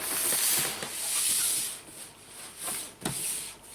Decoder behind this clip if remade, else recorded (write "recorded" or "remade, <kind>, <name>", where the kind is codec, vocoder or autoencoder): recorded